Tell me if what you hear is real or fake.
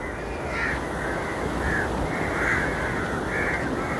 real